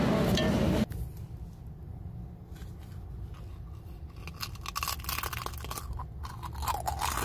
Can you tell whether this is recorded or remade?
recorded